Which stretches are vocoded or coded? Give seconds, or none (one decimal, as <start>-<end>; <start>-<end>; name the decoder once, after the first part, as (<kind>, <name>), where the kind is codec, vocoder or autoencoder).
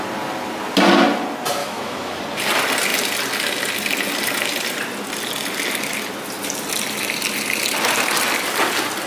1.6-2.2 (autoencoder, DAC-VAE)